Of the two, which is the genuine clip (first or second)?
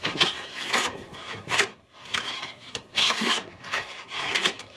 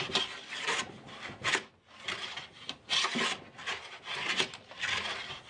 second